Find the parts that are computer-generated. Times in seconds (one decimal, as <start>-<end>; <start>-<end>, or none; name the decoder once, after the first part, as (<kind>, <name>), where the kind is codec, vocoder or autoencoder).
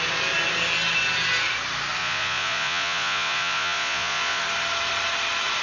2.0-4.4 (vocoder, Vocos)